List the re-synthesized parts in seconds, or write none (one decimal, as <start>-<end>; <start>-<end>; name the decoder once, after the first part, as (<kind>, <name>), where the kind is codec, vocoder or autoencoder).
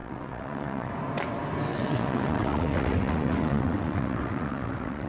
0.0-0.9 (vocoder, WaveNeXt); 1.7-5.1